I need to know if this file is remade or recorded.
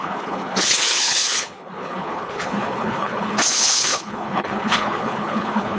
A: remade